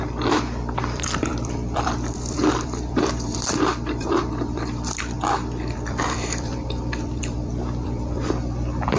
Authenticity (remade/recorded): remade